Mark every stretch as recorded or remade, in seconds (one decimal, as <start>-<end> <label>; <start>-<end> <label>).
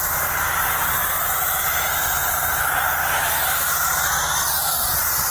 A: 0.0-5.3 recorded